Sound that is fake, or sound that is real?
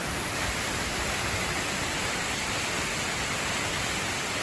real